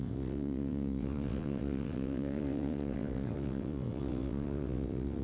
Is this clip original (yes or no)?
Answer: no